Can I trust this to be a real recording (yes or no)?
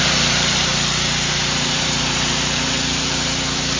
no